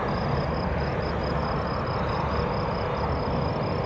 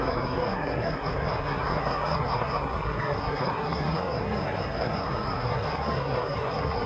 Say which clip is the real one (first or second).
first